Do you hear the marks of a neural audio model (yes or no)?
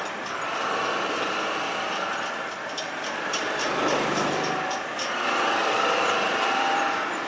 yes